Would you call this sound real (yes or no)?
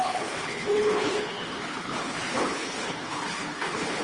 no